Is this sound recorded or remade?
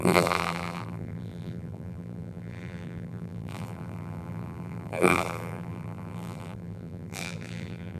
remade